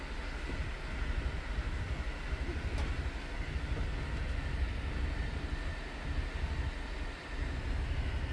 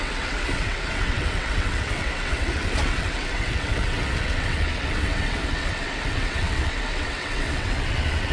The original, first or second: first